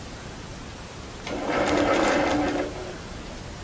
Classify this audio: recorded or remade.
recorded